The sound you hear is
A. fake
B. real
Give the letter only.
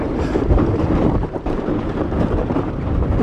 A